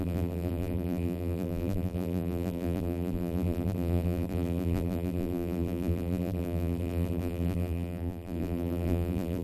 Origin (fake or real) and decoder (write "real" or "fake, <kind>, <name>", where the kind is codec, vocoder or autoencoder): fake, vocoder, BigVGAN v2